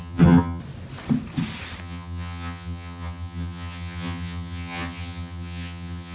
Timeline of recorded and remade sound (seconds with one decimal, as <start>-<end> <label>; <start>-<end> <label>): 0.0-0.6 remade; 0.6-1.8 recorded; 1.8-6.1 remade